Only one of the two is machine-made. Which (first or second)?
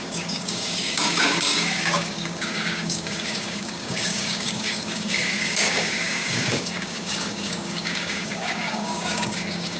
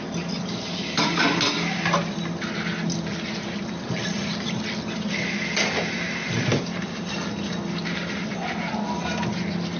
first